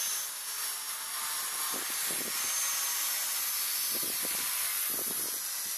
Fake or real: real